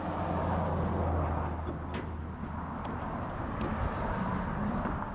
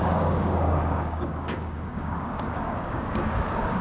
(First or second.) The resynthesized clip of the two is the second